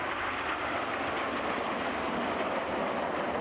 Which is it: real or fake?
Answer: real